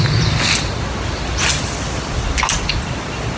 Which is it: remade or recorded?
recorded